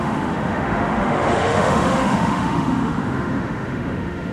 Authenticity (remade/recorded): remade